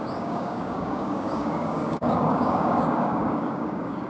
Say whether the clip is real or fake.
fake